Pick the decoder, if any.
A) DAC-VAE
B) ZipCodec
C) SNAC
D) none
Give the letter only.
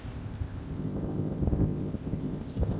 B